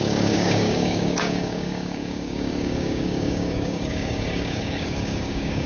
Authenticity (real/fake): fake